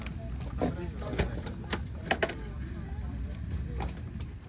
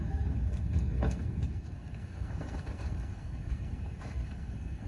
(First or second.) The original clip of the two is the first